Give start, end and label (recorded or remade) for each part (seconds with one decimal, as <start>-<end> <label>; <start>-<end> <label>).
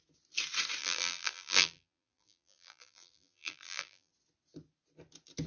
0.0-0.8 recorded; 0.8-4.1 remade; 4.1-5.5 recorded